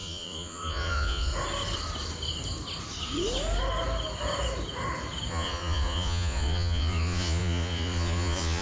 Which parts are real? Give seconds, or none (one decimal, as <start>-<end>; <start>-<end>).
1.3-5.3